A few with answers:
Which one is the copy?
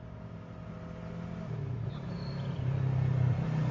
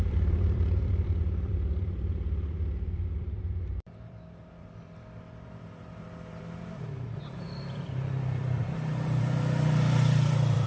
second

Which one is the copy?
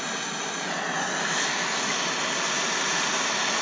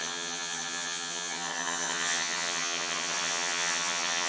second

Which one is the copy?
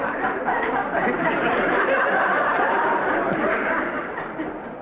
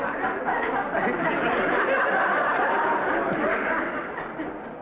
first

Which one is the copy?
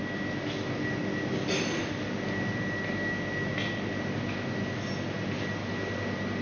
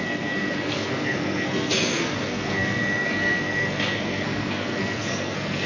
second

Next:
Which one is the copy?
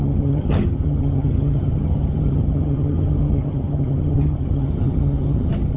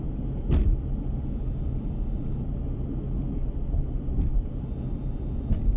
first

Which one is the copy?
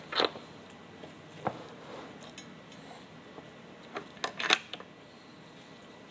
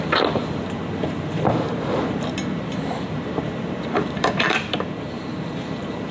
second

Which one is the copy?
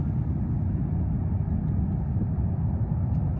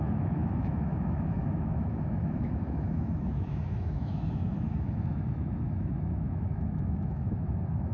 second